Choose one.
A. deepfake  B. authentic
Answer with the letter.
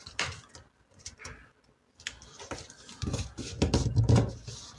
B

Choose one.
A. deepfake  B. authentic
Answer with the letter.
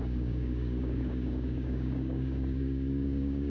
A